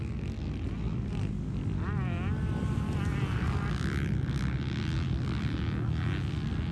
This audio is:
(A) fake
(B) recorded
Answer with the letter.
B